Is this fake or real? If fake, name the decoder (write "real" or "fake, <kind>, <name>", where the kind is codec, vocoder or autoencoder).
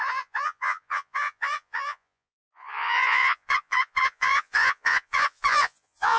fake, vocoder, Vocos